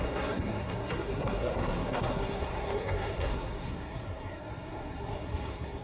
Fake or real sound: fake